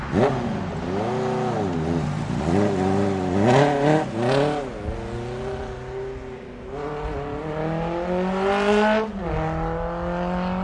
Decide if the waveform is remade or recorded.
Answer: recorded